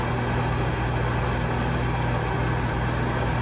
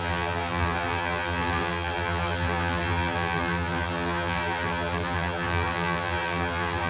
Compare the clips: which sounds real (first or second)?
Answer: first